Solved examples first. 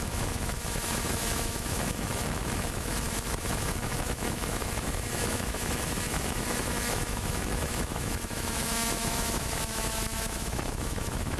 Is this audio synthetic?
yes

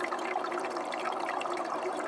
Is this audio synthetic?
yes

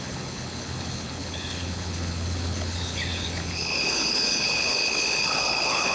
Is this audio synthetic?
yes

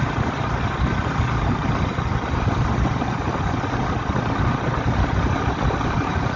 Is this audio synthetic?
no